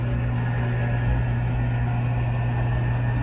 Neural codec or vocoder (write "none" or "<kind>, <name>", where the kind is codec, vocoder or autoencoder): none